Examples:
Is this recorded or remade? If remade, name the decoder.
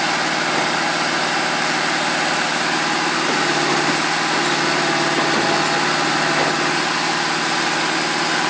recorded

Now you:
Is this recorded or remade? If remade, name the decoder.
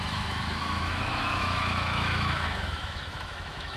remade, autoencoder, DAC-VAE